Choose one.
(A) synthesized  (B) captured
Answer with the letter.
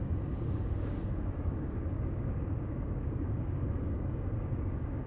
A